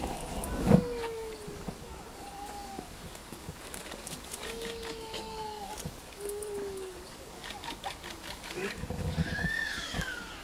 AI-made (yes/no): yes